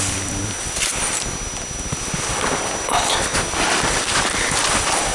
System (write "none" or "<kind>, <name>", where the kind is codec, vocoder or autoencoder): none